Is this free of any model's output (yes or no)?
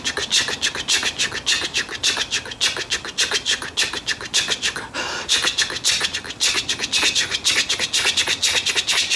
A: yes